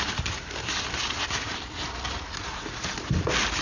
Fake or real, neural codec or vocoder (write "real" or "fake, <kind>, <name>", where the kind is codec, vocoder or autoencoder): real